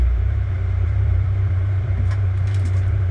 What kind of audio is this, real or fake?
fake